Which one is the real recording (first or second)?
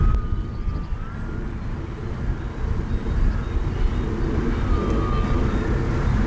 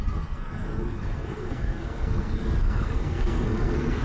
first